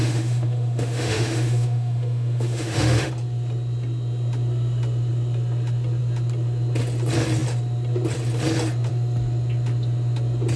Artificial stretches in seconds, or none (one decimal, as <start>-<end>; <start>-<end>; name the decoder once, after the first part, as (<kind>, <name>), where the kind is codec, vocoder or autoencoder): 0.0-3.1 (autoencoder, DAC-VAE)